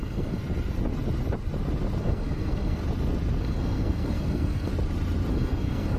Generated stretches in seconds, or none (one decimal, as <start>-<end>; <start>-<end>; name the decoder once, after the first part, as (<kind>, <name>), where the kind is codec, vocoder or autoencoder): 0.0-0.4 (codec, SNAC); 2.0-2.8; 3.4-4.7; 5.3-6.0